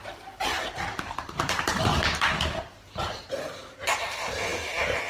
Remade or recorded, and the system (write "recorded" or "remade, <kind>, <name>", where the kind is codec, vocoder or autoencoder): remade, vocoder, BigVGAN v2